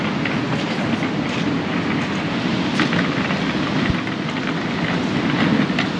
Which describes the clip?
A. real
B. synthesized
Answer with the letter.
A